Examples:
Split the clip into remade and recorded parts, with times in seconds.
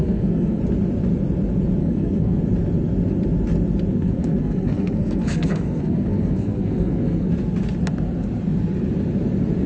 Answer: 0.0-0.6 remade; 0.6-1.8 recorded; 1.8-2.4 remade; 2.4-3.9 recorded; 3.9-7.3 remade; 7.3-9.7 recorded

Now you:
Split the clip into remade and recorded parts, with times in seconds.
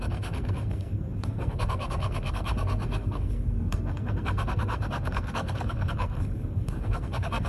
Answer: 0.0-7.5 remade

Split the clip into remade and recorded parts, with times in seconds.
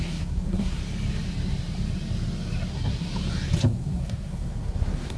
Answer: 0.0-0.8 remade; 0.8-2.7 recorded; 2.7-3.1 remade; 3.1-3.6 recorded; 3.6-5.2 remade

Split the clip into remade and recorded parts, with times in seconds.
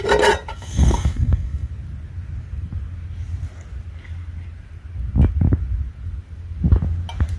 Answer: 0.0-0.5 recorded; 0.5-1.7 remade; 1.7-7.4 recorded